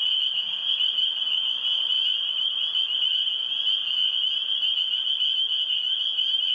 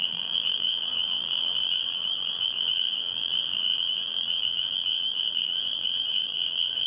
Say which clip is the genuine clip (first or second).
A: first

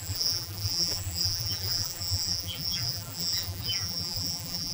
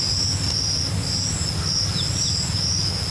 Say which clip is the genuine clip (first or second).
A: second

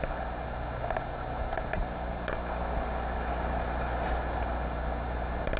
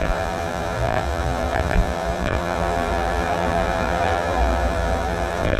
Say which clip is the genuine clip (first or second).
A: first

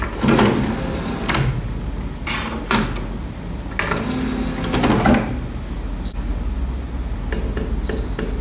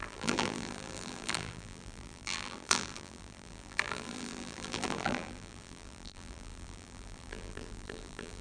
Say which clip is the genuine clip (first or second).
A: first